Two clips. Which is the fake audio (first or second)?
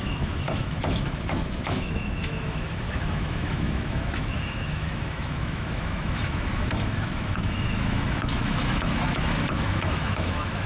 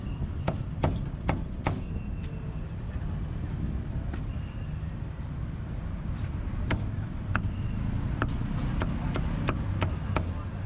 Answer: first